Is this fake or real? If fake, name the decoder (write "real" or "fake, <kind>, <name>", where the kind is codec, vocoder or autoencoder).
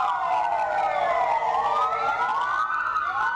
real